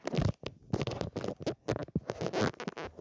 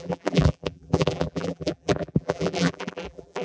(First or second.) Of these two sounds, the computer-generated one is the second